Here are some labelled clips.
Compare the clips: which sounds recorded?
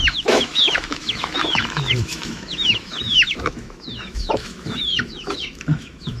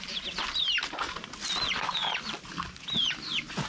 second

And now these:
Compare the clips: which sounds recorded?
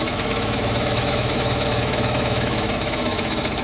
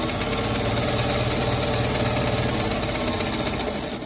second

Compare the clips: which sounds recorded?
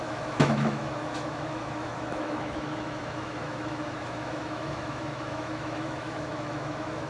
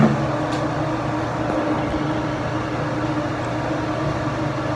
second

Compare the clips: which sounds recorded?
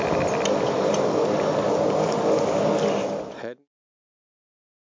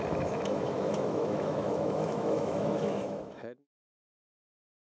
first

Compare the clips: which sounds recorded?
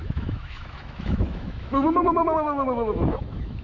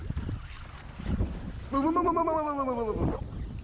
second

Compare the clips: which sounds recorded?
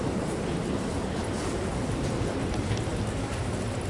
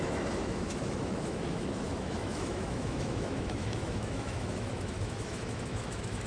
first